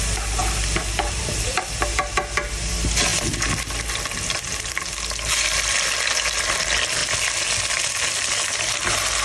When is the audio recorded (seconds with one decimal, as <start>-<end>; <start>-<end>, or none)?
0.0-9.2